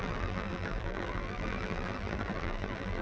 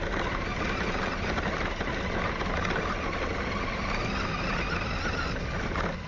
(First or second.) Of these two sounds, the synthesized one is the first